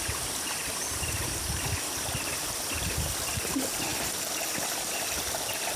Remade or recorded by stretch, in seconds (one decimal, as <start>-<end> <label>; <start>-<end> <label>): 0.0-5.8 recorded